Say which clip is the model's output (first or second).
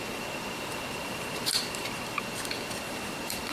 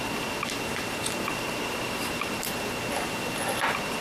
first